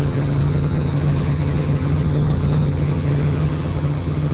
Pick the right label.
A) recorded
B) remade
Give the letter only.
B